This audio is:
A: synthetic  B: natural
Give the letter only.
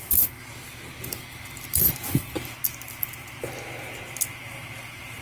B